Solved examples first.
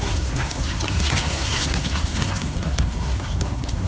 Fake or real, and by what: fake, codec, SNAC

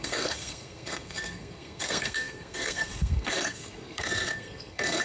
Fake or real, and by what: fake, codec, SNAC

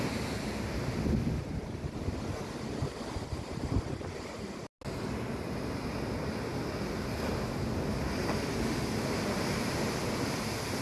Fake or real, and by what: real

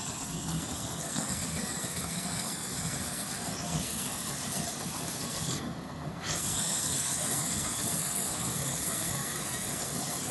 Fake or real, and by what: fake, codec, SNAC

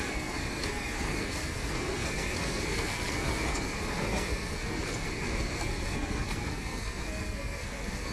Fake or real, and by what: fake, codec, SNAC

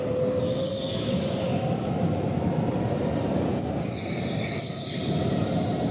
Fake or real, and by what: real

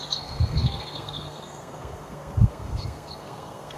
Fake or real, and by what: fake, codec, SNAC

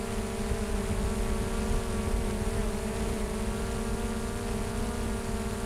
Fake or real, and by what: real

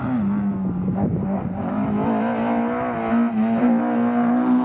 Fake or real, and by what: real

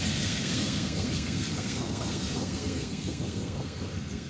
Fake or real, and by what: fake, codec, SNAC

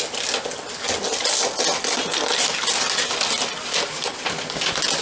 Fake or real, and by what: real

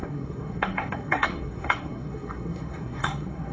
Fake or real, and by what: fake, codec, SNAC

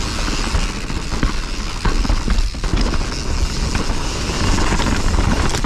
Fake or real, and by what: real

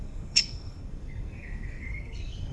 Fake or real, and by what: fake, codec, SNAC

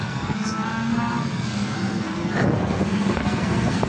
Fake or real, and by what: fake, codec, SNAC